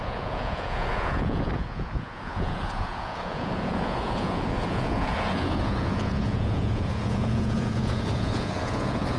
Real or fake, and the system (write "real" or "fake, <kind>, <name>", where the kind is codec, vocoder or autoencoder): fake, vocoder, Vocos